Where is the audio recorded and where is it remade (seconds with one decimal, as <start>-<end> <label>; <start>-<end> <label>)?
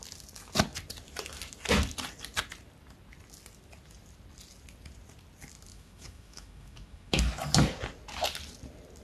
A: 0.0-5.7 recorded; 5.7-7.2 remade; 7.2-9.0 recorded